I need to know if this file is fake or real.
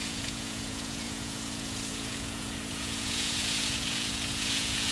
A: fake